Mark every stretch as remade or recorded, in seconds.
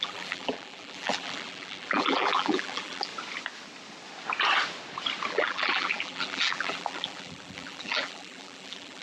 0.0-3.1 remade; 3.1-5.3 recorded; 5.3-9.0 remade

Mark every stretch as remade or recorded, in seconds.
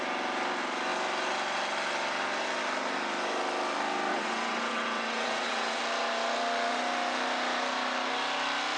0.0-4.1 recorded; 4.1-5.8 remade; 5.8-8.8 recorded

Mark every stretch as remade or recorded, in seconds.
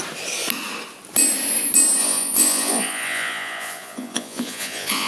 0.0-2.0 recorded; 2.0-5.1 remade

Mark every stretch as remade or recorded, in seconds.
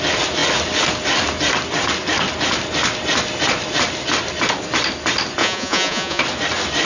0.0-5.4 recorded; 5.4-6.2 remade; 6.2-6.9 recorded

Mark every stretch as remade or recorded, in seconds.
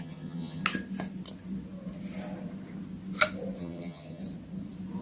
0.0-0.6 remade; 0.6-3.6 recorded; 3.6-4.2 remade; 4.2-5.0 recorded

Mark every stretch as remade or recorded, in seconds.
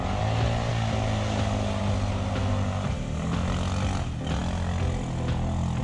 0.0-5.8 recorded